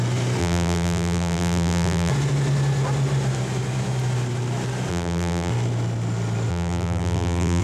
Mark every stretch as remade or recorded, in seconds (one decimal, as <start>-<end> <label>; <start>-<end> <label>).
0.0-0.4 recorded; 0.4-2.1 remade; 2.1-4.9 recorded; 4.9-5.5 remade; 5.5-6.5 recorded; 6.5-7.6 remade